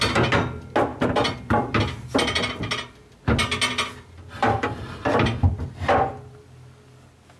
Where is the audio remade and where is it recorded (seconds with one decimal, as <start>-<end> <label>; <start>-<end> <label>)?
0.0-7.4 recorded